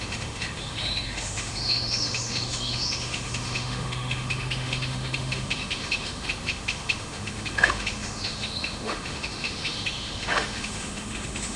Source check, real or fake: fake